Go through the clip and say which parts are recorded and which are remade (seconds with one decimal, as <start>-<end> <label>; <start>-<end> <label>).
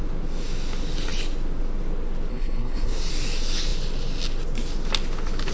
0.0-2.3 recorded; 2.3-3.1 remade; 3.1-5.5 recorded